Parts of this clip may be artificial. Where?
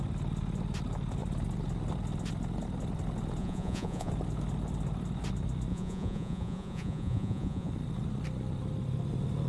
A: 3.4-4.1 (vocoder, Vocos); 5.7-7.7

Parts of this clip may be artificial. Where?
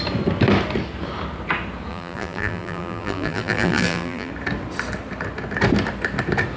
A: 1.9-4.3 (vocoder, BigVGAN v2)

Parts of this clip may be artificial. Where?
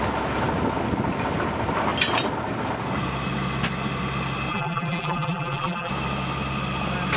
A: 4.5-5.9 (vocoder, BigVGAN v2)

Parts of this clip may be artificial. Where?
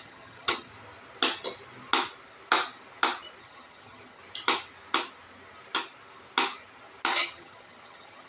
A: 0.0-0.7 (vocoder, HiFi-GAN); 3.4-4.2; 7.1-8.3